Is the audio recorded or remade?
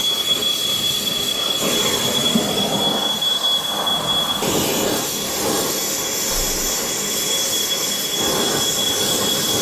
recorded